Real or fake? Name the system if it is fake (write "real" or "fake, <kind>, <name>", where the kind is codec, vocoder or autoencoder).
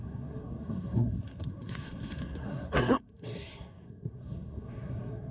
fake, codec, SNAC